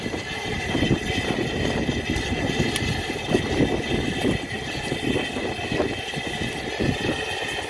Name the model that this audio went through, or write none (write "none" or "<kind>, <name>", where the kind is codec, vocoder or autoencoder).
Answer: none